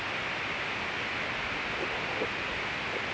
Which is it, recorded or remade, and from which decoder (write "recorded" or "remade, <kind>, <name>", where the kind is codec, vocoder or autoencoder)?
recorded